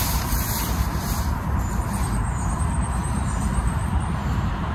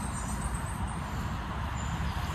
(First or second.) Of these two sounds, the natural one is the second